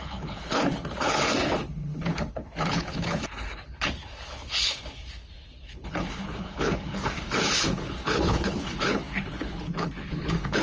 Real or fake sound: fake